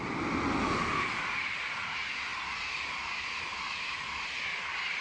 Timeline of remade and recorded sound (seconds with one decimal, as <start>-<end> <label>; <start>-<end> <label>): 0.0-5.0 recorded